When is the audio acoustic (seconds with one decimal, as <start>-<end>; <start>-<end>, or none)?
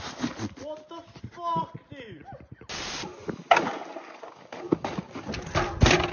0.0-6.1